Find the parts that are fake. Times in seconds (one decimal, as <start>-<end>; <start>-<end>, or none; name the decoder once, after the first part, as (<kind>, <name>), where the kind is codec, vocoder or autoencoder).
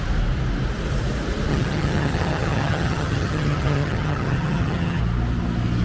1.5-5.0 (vocoder, HiFi-GAN)